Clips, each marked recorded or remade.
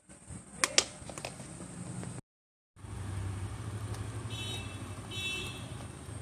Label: recorded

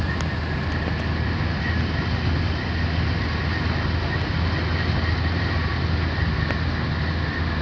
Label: recorded